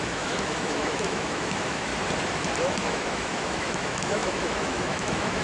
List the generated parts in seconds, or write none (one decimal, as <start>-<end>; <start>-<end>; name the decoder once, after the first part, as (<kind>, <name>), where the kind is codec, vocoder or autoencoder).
0.0-1.9 (autoencoder, DAC-VAE); 2.6-5.4

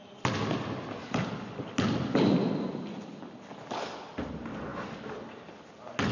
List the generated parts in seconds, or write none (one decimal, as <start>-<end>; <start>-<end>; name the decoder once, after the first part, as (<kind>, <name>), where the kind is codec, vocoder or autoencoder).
none